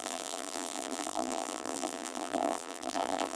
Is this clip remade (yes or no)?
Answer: yes